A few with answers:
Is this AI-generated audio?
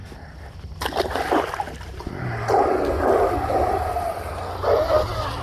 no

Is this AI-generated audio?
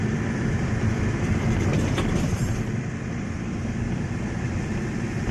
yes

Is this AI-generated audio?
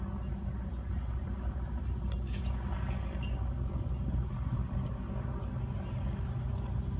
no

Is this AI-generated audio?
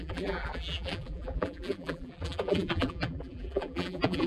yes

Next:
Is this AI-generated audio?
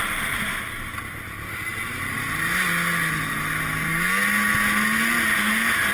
no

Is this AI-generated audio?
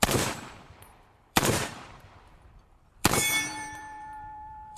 yes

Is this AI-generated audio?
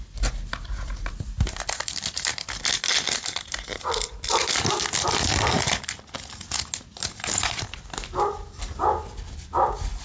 no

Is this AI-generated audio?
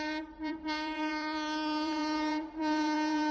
yes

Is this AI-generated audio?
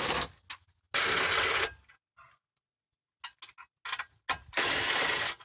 no